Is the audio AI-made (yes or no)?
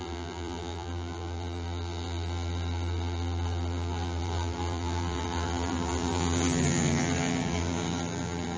yes